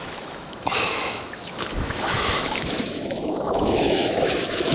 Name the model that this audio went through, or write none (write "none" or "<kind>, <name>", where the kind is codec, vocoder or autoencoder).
autoencoder, DAC-VAE